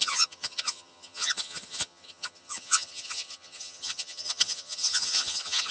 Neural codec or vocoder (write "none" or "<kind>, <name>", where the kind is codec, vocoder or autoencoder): vocoder, HiFi-GAN